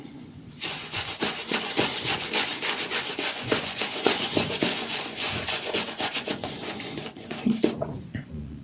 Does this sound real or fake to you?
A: fake